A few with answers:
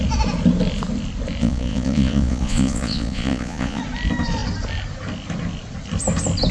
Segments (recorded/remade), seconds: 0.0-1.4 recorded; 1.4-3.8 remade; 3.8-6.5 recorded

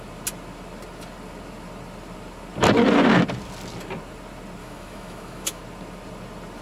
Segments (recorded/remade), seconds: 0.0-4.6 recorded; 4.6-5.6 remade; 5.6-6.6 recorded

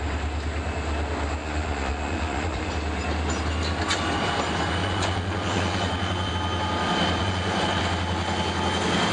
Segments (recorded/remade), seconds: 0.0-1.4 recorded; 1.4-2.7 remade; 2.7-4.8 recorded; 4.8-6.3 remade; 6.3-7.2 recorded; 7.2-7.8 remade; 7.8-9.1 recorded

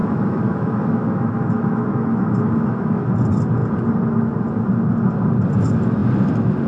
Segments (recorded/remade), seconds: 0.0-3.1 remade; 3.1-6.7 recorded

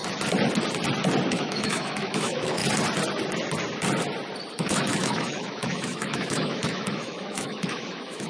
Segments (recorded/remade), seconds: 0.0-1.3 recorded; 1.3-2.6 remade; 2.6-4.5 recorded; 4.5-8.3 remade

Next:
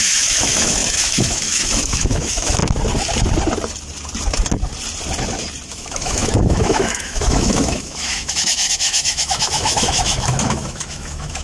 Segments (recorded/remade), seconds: 0.0-2.6 remade; 2.6-5.7 recorded; 5.7-11.4 remade

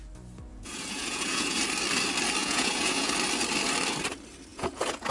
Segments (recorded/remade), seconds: 0.0-0.5 recorded; 0.5-1.6 remade; 1.6-2.4 recorded; 2.4-3.1 remade; 3.1-4.5 recorded; 4.5-5.1 remade